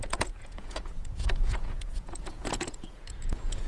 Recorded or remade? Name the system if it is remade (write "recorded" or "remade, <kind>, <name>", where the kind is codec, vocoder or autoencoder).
remade, vocoder, Vocos